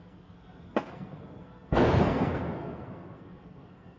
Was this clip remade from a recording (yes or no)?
yes